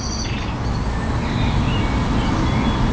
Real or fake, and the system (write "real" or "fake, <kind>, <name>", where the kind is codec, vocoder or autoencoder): real